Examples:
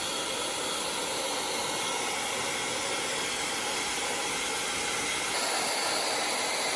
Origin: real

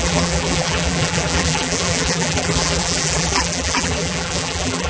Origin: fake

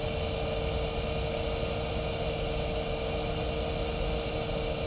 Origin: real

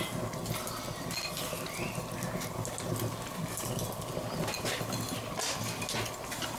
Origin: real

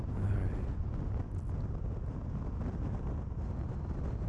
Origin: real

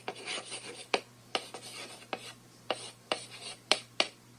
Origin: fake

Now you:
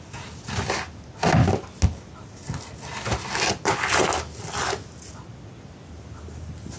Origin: real